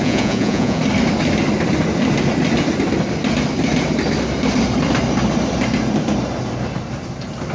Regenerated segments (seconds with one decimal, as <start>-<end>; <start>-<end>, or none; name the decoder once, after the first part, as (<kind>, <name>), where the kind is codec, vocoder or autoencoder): 0.0-0.8 (vocoder, Vocos)